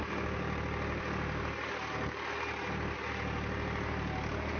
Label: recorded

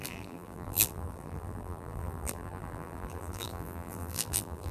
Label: remade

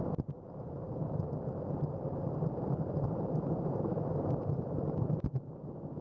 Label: remade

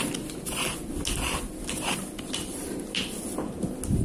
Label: recorded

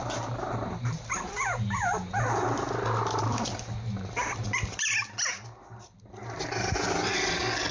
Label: remade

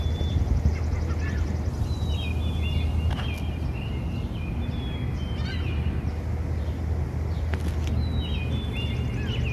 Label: recorded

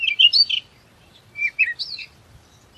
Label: remade